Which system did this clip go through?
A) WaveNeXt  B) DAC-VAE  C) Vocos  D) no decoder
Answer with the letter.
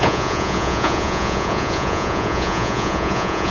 C